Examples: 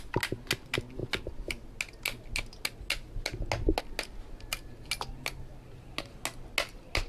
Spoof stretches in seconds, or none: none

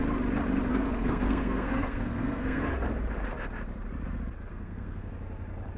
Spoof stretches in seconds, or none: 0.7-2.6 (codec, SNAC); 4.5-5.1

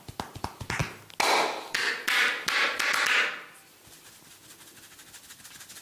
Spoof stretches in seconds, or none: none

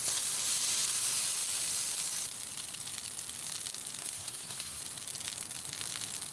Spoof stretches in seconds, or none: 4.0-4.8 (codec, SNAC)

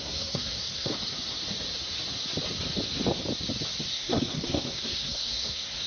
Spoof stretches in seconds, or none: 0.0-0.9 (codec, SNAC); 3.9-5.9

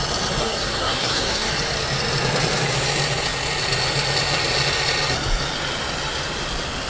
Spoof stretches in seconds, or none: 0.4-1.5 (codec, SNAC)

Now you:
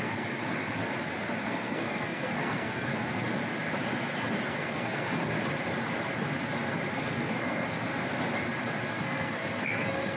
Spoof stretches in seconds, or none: 0.0-0.8 (codec, SNAC); 1.4-2.9; 4.5-5.2; 6.7-7.9; 8.9-10.2

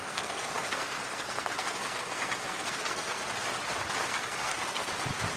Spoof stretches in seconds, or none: 0.0-3.2 (codec, SNAC); 4.0-4.9